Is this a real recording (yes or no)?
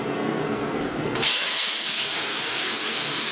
no